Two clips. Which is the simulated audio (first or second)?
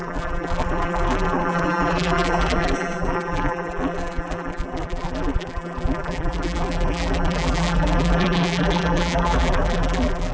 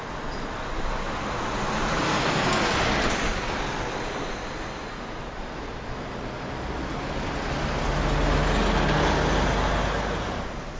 first